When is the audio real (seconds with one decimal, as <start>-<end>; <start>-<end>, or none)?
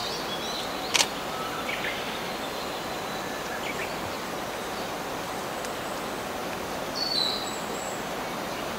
0.0-8.8